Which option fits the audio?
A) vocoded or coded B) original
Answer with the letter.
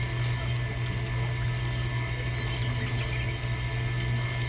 B